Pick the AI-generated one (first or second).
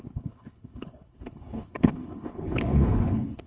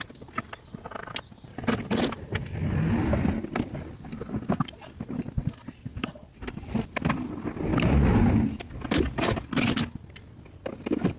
first